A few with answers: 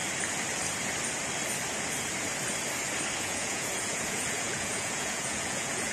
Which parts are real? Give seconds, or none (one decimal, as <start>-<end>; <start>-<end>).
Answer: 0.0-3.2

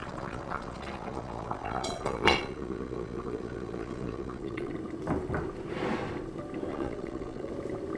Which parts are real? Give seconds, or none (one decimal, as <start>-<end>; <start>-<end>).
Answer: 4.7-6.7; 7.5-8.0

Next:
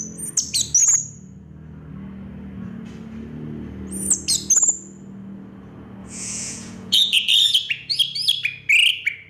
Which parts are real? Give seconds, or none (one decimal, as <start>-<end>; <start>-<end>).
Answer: 0.0-6.0; 8.0-9.3

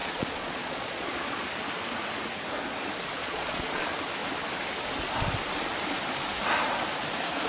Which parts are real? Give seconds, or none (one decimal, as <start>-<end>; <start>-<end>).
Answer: 1.4-3.2; 3.8-7.5

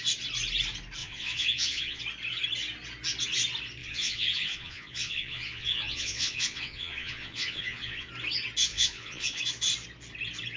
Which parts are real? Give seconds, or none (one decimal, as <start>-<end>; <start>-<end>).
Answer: 0.0-1.0; 2.0-3.8; 8.1-8.7; 9.4-10.6

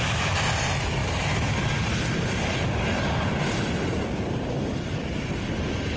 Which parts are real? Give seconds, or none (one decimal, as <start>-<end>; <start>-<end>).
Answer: 0.0-6.0